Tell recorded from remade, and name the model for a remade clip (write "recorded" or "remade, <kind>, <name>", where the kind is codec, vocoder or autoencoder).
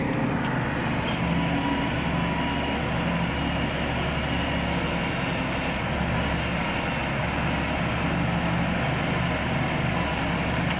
recorded